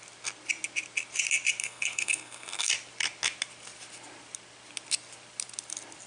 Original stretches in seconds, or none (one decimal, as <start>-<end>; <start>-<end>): 0.0-1.6; 2.7-6.1